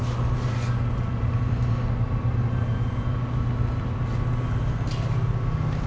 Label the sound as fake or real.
real